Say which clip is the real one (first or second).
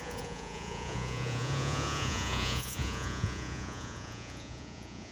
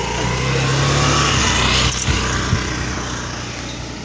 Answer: second